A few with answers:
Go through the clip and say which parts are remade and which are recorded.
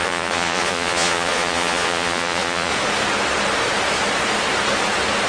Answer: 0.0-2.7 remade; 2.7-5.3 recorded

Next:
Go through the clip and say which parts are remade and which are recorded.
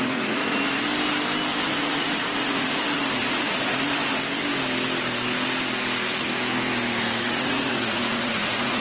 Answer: 0.0-0.9 remade; 0.9-1.6 recorded; 1.6-4.0 remade; 4.0-7.3 recorded; 7.3-8.8 remade